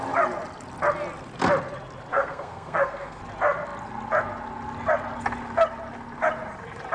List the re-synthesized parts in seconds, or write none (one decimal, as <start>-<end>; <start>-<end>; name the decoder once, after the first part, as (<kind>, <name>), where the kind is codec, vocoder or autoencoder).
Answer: 2.1-3.2 (codec, SNAC)